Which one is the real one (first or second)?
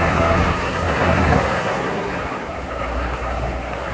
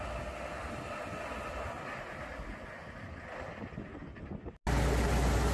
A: second